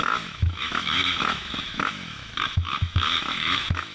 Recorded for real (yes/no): no